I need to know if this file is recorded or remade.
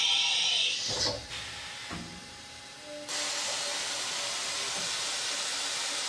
recorded